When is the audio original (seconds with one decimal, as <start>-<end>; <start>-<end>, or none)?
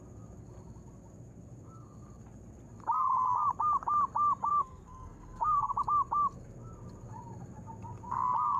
0.0-4.5; 5.7-8.6